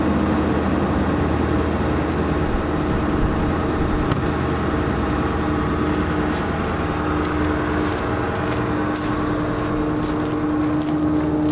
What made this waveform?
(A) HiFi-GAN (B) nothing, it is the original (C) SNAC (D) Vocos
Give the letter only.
B